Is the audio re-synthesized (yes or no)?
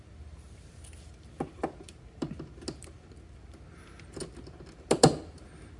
no